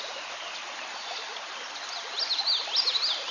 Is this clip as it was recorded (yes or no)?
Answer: yes